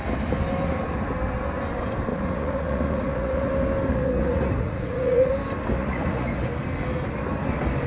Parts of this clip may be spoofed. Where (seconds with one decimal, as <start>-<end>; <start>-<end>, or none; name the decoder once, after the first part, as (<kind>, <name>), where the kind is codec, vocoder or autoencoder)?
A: 2.1-3.5 (vocoder, Vocos); 3.9-5.3; 5.8-6.4